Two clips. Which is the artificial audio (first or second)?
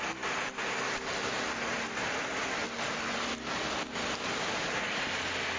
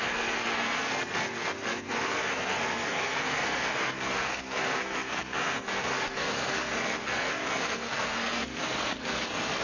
second